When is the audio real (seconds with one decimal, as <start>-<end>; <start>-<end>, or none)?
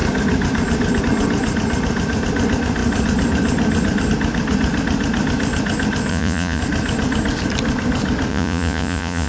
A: 0.0-6.1; 6.6-8.3